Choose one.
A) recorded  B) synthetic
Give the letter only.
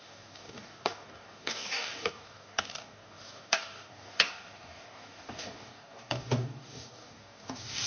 B